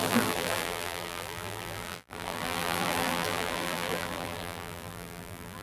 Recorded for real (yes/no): no